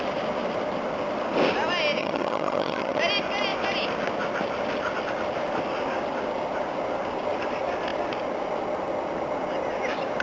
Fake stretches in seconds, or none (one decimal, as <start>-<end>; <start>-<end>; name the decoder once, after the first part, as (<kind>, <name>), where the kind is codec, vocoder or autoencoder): 2.0-3.0 (vocoder, HiFi-GAN)